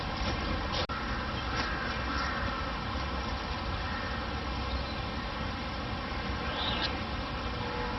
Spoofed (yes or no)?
no